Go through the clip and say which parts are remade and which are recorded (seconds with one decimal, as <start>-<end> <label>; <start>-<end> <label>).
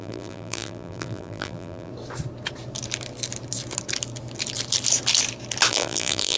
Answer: 0.0-1.9 remade; 1.9-5.7 recorded; 5.7-6.4 remade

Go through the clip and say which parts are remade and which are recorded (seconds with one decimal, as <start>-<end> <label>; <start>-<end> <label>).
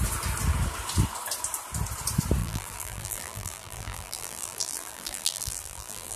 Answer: 0.0-2.4 recorded; 2.4-6.2 remade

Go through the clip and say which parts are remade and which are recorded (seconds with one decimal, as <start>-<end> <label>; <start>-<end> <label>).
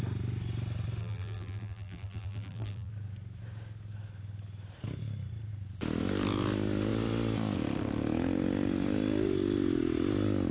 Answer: 0.0-1.0 recorded; 1.0-2.9 remade; 2.9-10.5 recorded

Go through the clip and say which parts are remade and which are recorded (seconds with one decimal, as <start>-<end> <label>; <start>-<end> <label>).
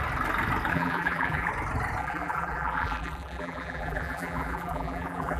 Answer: 0.0-0.7 recorded; 0.7-1.5 remade; 1.5-2.0 recorded; 2.0-5.4 remade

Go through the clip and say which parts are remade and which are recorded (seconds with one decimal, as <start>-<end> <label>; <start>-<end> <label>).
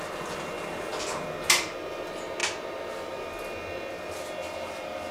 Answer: 0.0-5.1 recorded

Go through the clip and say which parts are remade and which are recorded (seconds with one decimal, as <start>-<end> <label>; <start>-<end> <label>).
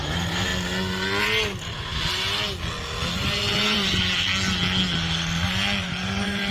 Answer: 0.0-0.5 remade; 0.5-1.2 recorded; 1.2-1.9 remade; 1.9-3.2 recorded; 3.2-4.3 remade; 4.3-5.8 recorded; 5.8-6.5 remade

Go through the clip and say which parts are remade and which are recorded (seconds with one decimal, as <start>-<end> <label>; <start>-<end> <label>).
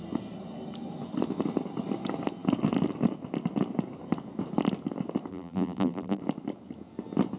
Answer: 0.0-5.3 recorded; 5.3-6.2 remade; 6.2-7.4 recorded